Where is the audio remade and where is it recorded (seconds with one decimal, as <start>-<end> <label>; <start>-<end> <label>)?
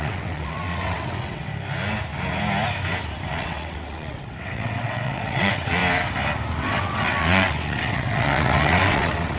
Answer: 0.0-1.4 remade; 1.4-3.3 recorded; 3.3-5.8 remade; 5.8-6.6 recorded; 6.6-9.4 remade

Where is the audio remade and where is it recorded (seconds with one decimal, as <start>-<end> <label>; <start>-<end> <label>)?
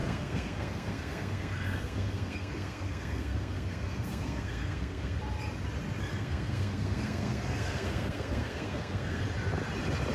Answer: 0.0-5.2 remade; 5.2-6.1 recorded; 6.1-9.2 remade; 9.2-10.1 recorded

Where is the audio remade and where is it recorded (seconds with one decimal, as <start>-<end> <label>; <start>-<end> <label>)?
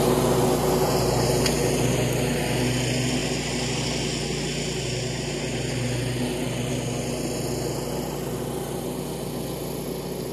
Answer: 0.0-10.3 recorded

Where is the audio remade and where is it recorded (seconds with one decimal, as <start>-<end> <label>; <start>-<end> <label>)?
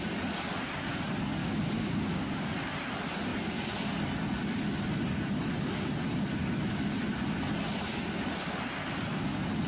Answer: 0.0-1.4 recorded; 1.4-2.5 remade; 2.5-9.7 recorded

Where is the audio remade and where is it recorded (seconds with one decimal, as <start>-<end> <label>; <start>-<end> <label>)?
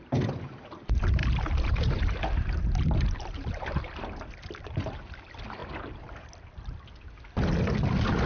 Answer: 0.0-1.2 recorded; 1.2-4.0 remade; 4.0-8.3 recorded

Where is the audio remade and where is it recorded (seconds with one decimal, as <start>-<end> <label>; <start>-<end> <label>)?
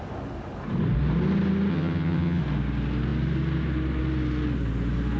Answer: 0.0-1.7 recorded; 1.7-2.4 remade; 2.4-5.2 recorded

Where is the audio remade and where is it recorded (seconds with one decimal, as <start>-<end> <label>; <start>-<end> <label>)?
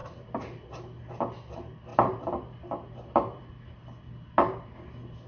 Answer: 0.0-0.7 remade; 0.7-1.9 recorded; 1.9-3.5 remade; 3.5-5.3 recorded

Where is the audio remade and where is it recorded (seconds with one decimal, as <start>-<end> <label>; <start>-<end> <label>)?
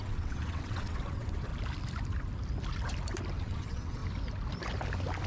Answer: 0.0-1.5 remade; 1.5-3.4 recorded; 3.4-4.0 remade; 4.0-5.3 recorded